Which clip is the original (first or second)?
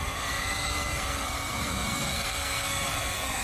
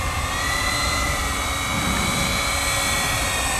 second